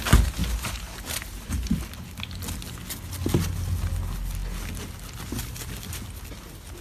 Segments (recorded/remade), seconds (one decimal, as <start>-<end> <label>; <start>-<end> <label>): 0.0-0.4 recorded; 0.4-1.8 remade; 1.8-6.8 recorded